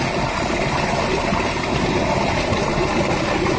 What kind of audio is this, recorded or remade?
recorded